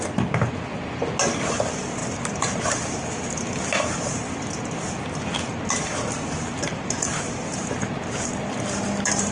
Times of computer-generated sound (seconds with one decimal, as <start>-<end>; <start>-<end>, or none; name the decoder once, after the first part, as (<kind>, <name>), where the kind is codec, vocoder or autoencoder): 2.0-4.3 (vocoder, BigVGAN v2); 6.7-9.3